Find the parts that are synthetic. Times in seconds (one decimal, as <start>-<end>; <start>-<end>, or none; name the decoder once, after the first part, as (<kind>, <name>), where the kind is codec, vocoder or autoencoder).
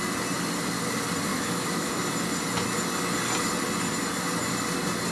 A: 1.3-1.9 (autoencoder, DAC-VAE)